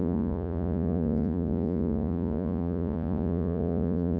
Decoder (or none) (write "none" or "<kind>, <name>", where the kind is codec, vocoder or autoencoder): vocoder, Vocos